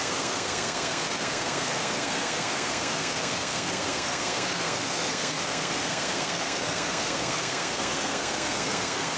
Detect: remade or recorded remade